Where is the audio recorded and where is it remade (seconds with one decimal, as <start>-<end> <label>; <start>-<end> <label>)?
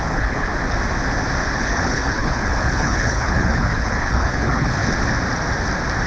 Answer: 0.0-0.5 remade; 0.5-1.5 recorded; 1.5-4.8 remade; 4.8-6.1 recorded